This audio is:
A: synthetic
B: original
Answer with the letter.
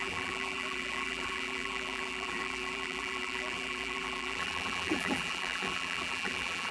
A